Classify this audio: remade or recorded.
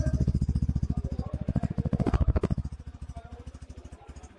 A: recorded